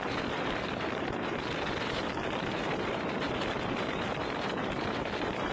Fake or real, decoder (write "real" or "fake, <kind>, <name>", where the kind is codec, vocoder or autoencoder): fake, vocoder, BigVGAN v2